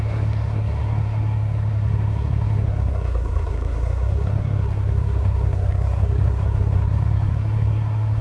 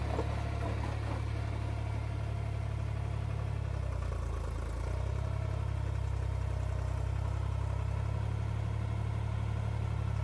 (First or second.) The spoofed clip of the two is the first